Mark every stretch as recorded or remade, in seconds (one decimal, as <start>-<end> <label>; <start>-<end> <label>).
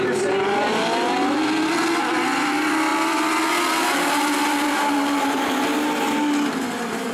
0.0-7.1 recorded